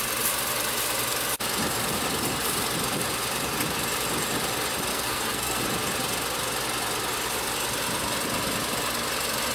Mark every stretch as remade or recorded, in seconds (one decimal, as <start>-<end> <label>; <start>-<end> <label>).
0.0-4.9 recorded; 4.9-5.6 remade; 5.6-9.5 recorded